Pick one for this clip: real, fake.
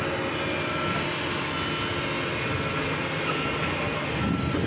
real